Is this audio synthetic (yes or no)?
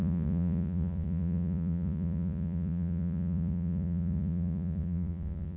yes